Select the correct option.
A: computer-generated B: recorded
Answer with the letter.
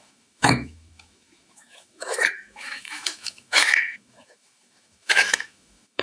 A